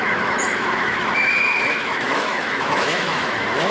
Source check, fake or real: fake